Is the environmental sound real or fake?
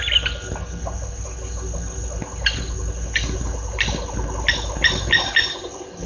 real